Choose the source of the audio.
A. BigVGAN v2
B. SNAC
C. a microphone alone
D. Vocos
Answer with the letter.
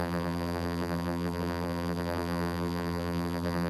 A